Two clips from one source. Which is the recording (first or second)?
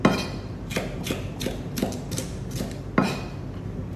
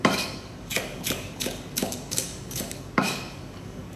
first